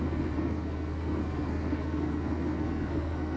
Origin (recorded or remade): remade